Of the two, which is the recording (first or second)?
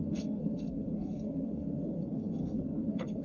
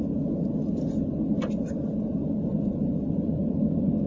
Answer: second